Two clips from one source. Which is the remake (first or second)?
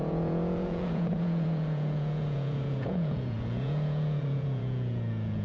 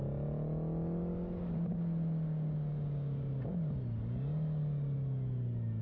first